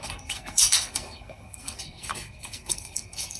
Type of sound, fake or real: fake